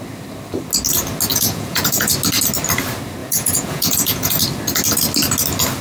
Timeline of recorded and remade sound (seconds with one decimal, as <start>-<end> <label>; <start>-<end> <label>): 0.0-1.3 recorded; 1.3-2.1 remade; 2.1-3.2 recorded; 3.2-4.4 remade; 4.4-5.8 recorded